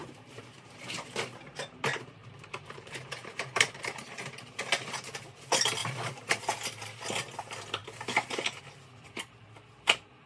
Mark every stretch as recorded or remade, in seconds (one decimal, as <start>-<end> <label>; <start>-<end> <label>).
0.0-5.0 remade; 5.0-5.8 recorded; 5.8-6.3 remade; 6.3-10.3 recorded